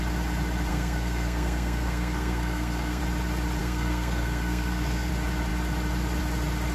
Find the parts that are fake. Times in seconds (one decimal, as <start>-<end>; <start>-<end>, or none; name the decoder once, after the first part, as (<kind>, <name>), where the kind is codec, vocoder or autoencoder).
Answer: 0.7-3.0 (codec, SNAC); 3.6-5.1